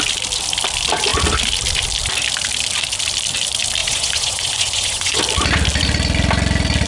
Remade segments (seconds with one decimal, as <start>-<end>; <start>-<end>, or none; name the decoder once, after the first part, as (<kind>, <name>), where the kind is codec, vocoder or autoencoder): 3.8-5.2 (vocoder, Vocos)